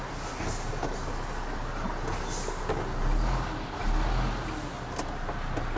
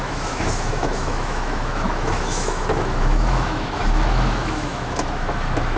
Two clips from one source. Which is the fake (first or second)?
second